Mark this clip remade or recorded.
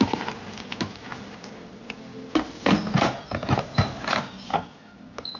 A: recorded